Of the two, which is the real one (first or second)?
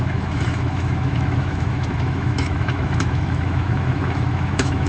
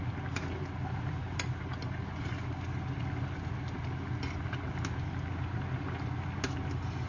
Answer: second